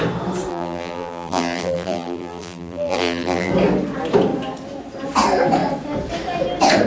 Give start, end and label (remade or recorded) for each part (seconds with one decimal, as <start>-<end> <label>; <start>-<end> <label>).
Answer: 0.0-0.5 recorded; 0.5-3.5 remade; 3.5-6.9 recorded